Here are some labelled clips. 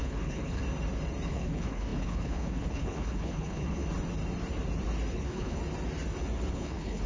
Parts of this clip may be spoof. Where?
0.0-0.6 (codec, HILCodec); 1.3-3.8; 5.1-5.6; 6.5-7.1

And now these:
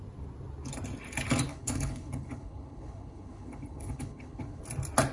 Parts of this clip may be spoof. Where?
1.5-4.6 (codec, HILCodec)

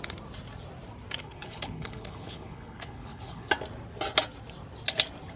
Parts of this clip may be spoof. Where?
1.2-3.5 (codec, HILCodec)

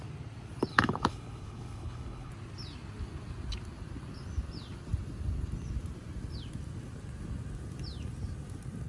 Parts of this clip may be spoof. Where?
0.7-2.3 (codec, HILCodec)